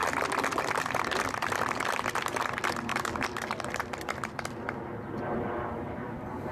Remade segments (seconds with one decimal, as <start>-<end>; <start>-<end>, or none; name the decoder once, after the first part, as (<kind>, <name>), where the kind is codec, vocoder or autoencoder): none